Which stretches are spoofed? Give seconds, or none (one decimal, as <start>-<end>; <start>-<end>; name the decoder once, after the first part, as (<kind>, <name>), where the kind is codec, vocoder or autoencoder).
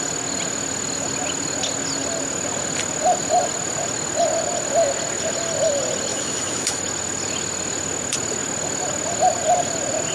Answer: 6.1-6.8 (autoencoder, DAC-VAE)